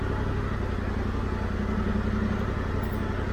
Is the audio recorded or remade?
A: recorded